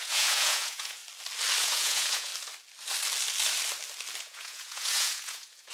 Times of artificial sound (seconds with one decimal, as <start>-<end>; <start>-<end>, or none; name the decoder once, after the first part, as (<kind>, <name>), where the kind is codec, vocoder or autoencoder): 0.0-1.0 (vocoder, Vocos); 1.6-2.3; 4.2-5.7